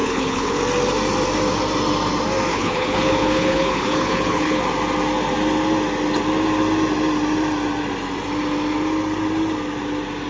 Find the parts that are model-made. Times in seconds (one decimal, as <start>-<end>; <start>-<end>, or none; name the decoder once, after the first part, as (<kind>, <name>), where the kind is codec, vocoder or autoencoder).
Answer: 0.0-0.6 (codec, HILCodec); 2.5-4.6